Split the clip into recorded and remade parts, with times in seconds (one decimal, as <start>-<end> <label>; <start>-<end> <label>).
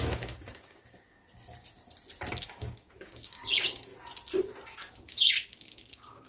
0.0-1.2 remade; 1.2-2.4 recorded; 2.4-3.9 remade; 3.9-5.0 recorded; 5.0-6.3 remade